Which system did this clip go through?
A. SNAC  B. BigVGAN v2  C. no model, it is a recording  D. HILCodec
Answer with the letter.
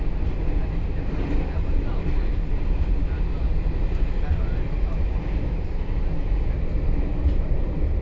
C